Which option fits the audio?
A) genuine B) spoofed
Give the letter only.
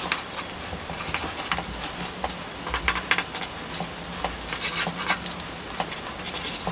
A